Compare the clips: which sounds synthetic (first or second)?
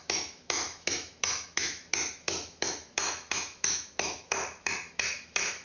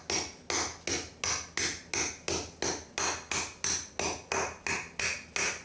first